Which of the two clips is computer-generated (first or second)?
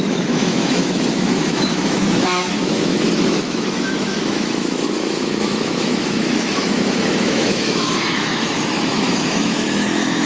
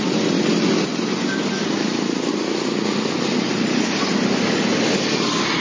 first